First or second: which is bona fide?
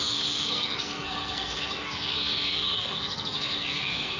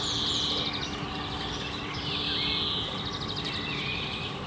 second